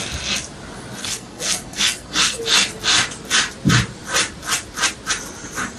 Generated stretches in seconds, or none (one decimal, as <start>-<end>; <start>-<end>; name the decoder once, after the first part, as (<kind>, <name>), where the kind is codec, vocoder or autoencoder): 1.0-2.4 (codec, SNAC)